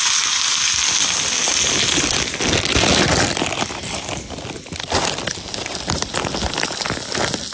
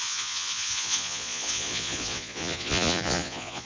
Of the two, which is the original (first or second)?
first